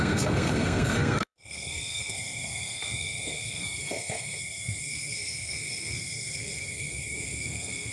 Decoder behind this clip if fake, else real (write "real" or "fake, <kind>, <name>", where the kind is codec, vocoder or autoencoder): fake, codec, SNAC